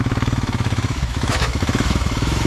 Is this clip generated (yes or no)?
yes